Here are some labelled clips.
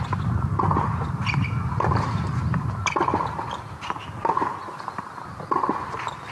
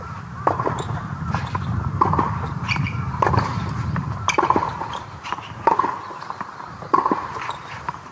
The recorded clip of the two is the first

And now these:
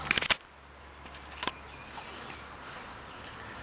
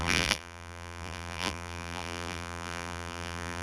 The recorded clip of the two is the first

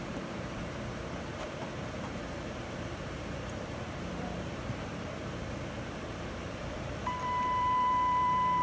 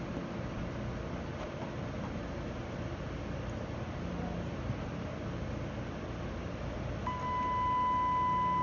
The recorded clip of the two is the second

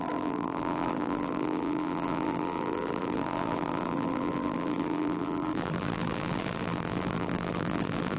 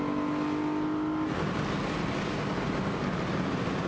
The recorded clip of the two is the second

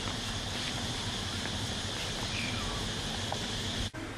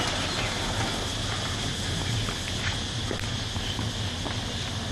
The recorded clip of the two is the second